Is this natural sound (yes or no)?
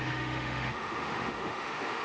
no